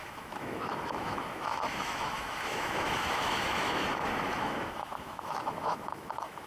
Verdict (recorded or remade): remade